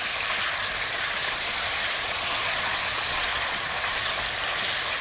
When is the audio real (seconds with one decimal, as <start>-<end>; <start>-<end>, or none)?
0.0-1.2; 4.2-5.0